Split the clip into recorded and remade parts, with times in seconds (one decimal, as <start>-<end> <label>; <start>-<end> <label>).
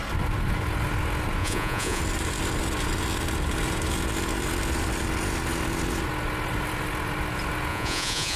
0.0-1.4 recorded; 1.4-2.0 remade; 2.0-7.7 recorded; 7.7-8.4 remade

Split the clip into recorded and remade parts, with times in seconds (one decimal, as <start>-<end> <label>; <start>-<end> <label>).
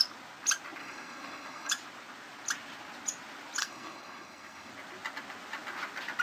0.0-0.8 recorded; 0.8-1.7 remade; 1.7-3.6 recorded; 3.6-4.7 remade; 4.7-6.2 recorded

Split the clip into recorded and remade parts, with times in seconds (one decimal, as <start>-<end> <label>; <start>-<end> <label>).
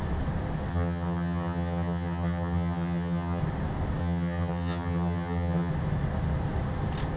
0.0-0.7 recorded; 0.7-3.4 remade; 3.4-4.0 recorded; 4.0-5.7 remade; 5.7-7.2 recorded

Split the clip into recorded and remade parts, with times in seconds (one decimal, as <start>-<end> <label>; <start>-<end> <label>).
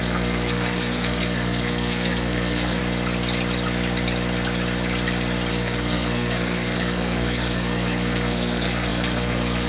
0.0-2.8 remade; 2.8-5.5 recorded; 5.5-9.7 remade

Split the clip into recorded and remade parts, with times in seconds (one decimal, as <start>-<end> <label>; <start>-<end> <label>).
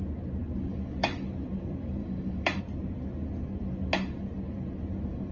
0.0-0.7 recorded; 0.7-1.3 remade; 1.3-2.0 recorded; 2.0-2.6 remade; 2.6-5.3 recorded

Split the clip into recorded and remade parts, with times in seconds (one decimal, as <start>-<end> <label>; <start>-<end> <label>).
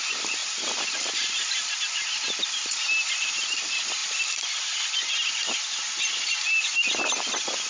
0.0-7.7 recorded